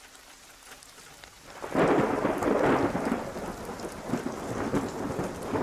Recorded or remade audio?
recorded